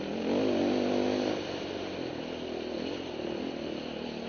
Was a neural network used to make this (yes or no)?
no